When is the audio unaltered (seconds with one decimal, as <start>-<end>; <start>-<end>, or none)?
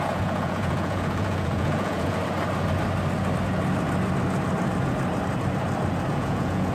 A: 2.2-6.1